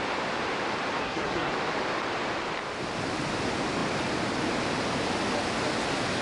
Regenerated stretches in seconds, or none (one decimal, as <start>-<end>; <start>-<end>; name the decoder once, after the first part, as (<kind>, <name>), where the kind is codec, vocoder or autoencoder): 1.0-1.5 (codec, SNAC)